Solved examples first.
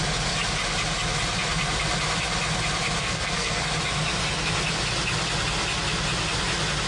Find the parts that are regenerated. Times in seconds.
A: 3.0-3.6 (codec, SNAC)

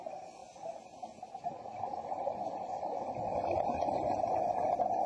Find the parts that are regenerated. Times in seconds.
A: none

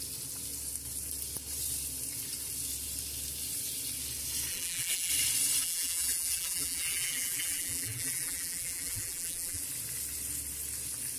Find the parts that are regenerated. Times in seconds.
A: 4.5-5.1 (vocoder, BigVGAN v2); 5.6-9.6

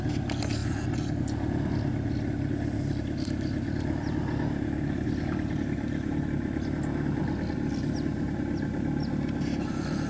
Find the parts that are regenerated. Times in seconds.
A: none

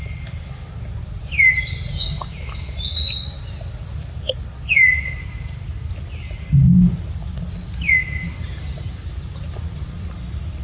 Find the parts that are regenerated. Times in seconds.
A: none

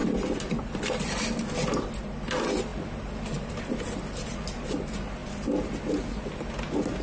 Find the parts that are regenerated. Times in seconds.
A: 0.0-1.0 (vocoder, BigVGAN v2); 2.7-4.8

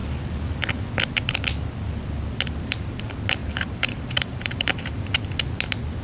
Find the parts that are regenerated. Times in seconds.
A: 3.4-5.0 (vocoder, BigVGAN v2)

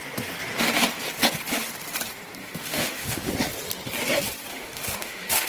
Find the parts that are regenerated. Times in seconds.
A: 2.4-3.3 (autoencoder, DAC-VAE); 4.5-5.5